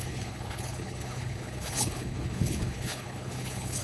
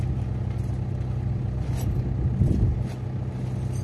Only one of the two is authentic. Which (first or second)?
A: second